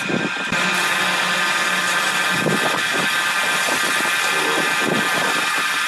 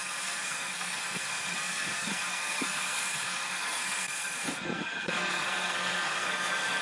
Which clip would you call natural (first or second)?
first